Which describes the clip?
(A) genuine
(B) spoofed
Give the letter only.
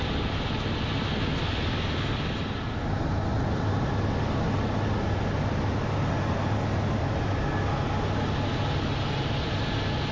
A